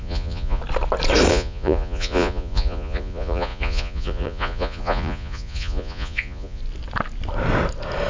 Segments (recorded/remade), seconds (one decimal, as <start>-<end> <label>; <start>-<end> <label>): 0.0-0.6 remade; 0.6-1.3 recorded; 1.3-6.6 remade; 6.6-8.1 recorded

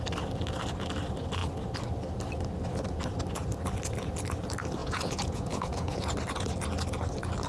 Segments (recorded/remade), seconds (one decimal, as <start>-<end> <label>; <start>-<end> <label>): 0.0-4.8 recorded; 4.8-6.1 remade; 6.1-7.5 recorded